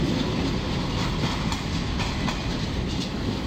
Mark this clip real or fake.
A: real